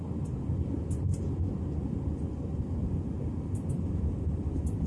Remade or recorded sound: recorded